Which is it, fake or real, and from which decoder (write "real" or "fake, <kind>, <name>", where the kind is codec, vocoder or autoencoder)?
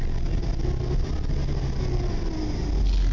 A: real